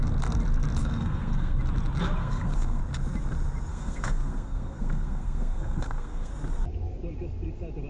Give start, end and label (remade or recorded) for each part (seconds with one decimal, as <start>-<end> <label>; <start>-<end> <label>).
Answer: 0.0-0.8 recorded; 0.8-1.6 remade; 1.6-2.2 recorded; 2.2-2.8 remade; 2.8-3.7 recorded; 3.7-6.3 remade; 6.3-7.9 recorded